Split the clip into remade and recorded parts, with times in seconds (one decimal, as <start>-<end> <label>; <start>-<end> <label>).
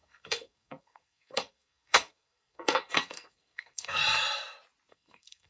0.0-4.0 remade; 4.0-4.9 recorded; 4.9-5.5 remade